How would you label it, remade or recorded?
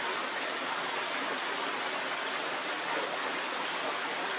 recorded